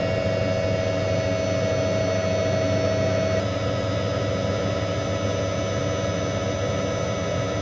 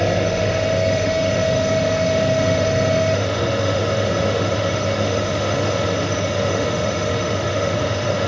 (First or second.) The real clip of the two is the first